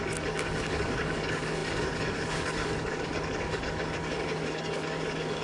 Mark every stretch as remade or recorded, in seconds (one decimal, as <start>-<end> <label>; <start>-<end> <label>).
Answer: 0.0-5.4 remade